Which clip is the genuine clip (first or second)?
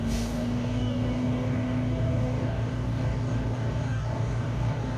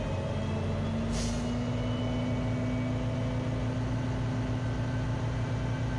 second